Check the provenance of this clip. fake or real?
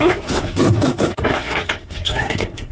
fake